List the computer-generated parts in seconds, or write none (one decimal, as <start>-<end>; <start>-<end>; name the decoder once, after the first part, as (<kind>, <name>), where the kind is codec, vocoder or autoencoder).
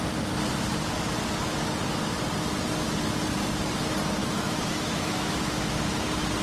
4.2-5.8 (autoencoder, DAC-VAE)